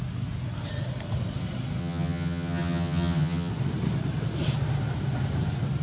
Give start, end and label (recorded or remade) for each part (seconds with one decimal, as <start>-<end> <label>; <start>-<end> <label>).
0.0-1.8 recorded; 1.8-3.5 remade; 3.5-5.8 recorded